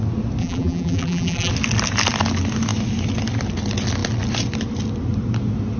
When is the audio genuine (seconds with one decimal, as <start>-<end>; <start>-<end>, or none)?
0.0-0.4; 1.5-5.8